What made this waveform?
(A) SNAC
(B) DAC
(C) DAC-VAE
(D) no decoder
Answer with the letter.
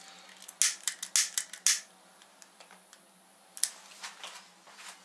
D